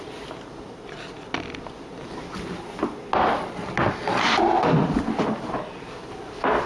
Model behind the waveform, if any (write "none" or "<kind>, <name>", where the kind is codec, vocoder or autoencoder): none